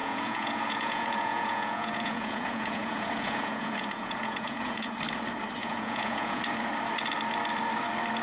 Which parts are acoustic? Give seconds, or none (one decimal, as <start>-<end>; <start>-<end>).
4.9-5.6; 6.4-8.2